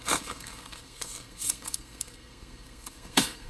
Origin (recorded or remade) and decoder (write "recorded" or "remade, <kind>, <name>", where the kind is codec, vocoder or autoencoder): remade, codec, SNAC